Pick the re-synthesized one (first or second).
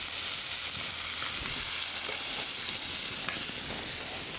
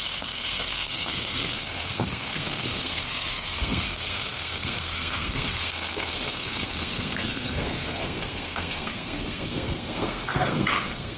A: second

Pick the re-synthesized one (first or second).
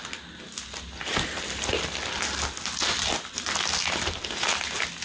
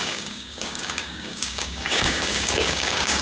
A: second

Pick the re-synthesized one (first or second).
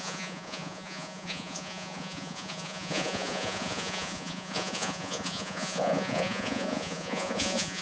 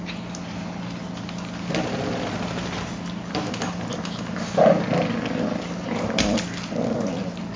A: first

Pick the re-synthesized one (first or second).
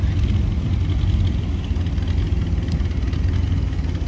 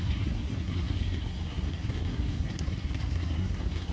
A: second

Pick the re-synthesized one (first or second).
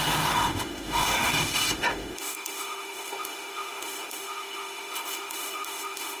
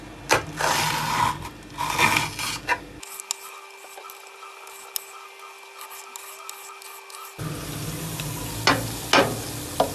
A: first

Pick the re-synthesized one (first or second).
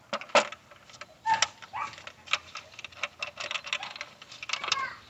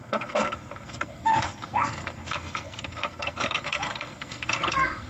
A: second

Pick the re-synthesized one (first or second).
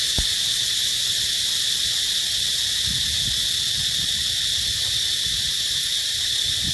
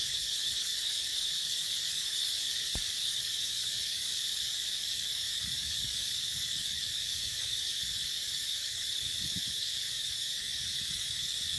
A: second